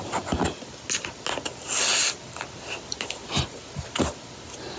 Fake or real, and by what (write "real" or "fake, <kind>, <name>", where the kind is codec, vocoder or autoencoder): real